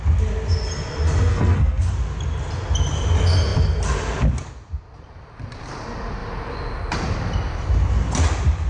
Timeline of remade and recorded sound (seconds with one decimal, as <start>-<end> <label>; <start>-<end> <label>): 0.0-1.3 recorded; 1.3-1.9 remade; 1.9-8.7 recorded